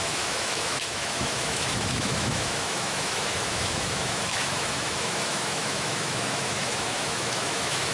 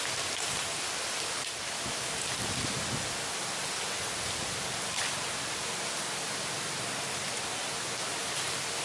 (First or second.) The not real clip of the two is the first